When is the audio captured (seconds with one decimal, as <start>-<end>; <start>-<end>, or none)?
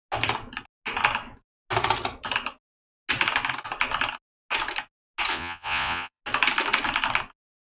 0.0-5.3; 6.2-7.6